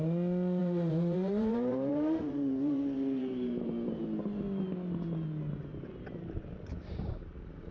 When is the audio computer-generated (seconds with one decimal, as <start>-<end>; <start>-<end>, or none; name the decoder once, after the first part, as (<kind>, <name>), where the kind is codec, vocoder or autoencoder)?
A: 0.6-4.0 (vocoder, BigVGAN v2); 5.7-7.7